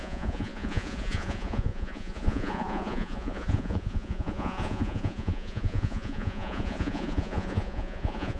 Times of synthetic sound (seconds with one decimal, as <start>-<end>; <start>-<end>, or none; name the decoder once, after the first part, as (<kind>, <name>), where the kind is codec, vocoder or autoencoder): 0.0-8.4 (vocoder, Vocos)